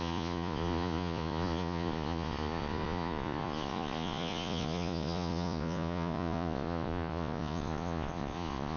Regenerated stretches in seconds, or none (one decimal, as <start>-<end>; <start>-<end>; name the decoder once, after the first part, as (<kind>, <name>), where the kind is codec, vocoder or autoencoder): 0.0-8.8 (vocoder, Vocos)